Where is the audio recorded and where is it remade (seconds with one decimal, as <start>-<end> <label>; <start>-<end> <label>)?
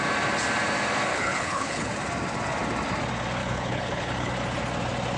0.0-1.1 recorded; 1.1-1.9 remade; 1.9-3.4 recorded; 3.4-4.3 remade; 4.3-5.2 recorded